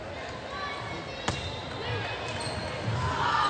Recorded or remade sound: recorded